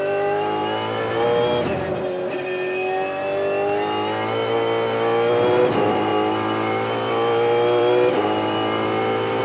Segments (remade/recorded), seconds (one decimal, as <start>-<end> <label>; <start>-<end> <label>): 0.0-6.1 recorded; 6.1-9.4 remade